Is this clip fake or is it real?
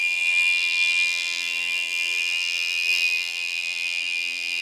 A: fake